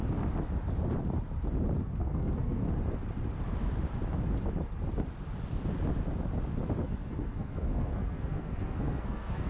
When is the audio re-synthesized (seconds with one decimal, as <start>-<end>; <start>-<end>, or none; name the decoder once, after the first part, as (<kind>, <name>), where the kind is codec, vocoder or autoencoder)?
1.8-2.6 (codec, SNAC); 6.8-9.5